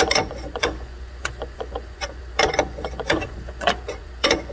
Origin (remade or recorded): remade